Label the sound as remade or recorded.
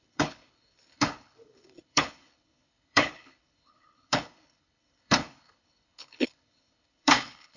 remade